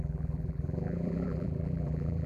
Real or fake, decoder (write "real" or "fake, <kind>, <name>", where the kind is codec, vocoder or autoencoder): fake, vocoder, BigVGAN v2